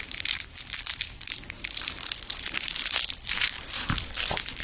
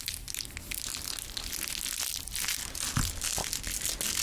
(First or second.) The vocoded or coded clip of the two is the first